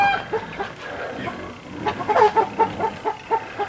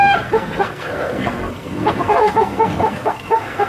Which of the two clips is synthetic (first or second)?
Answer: second